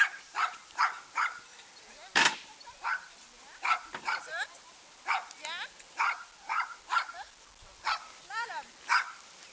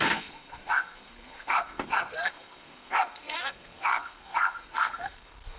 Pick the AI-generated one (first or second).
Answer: second